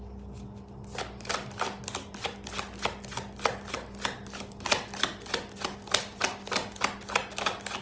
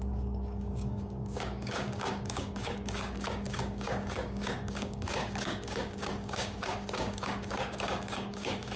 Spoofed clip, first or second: second